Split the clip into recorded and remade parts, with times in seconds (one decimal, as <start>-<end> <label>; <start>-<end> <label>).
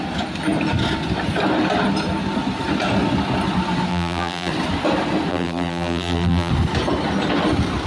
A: 0.0-3.9 recorded; 3.9-4.5 remade; 4.5-5.3 recorded; 5.3-6.5 remade; 6.5-7.9 recorded